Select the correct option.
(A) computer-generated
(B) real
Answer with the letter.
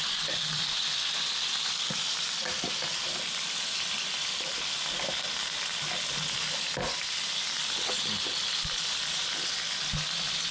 B